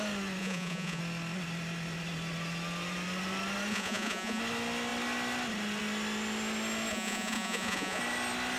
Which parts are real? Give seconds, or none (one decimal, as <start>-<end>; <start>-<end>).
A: 0.0-0.4; 1.0-3.7; 4.4-6.9; 8.0-8.6